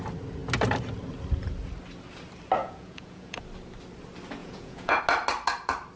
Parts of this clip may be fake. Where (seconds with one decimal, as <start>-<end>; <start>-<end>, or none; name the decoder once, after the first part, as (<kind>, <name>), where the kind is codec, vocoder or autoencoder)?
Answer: 2.6-3.4 (vocoder, Vocos); 4.4-5.0